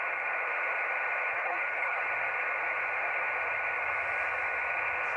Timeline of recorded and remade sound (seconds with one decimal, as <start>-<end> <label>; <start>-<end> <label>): 0.0-1.3 recorded; 1.3-2.0 remade; 2.0-5.2 recorded